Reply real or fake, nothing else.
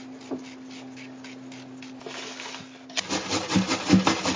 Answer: real